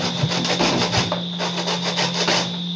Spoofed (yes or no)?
no